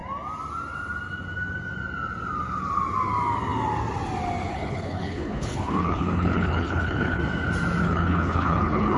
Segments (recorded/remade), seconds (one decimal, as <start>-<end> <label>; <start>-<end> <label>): 0.0-4.5 recorded; 4.5-7.2 remade; 7.2-7.8 recorded; 7.8-9.0 remade